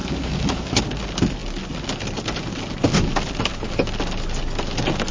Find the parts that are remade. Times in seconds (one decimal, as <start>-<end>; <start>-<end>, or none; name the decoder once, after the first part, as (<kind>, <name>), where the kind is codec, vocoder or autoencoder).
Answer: 0.0-0.8 (autoencoder, DAC-VAE)